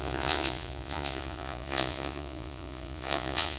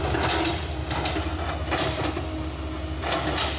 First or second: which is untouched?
second